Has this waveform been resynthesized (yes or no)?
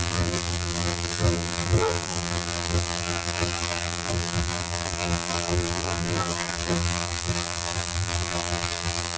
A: yes